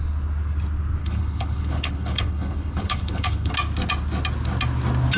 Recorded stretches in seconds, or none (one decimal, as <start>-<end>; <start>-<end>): 0.0-1.0; 3.5-5.2